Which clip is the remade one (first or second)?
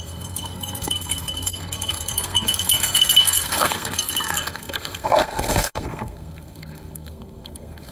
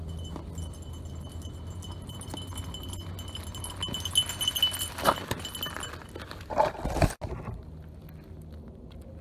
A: first